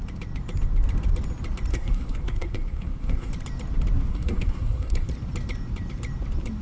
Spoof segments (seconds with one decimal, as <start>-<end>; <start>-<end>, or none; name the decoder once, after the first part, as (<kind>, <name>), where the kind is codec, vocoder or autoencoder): 1.7-3.3 (codec, SNAC); 4.1-5.1